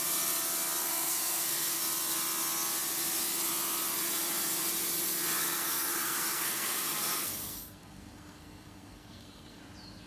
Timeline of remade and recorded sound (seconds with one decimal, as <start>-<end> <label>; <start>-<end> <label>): 0.0-0.8 recorded; 0.8-1.8 remade; 1.8-5.4 recorded; 5.4-9.6 remade; 9.6-10.1 recorded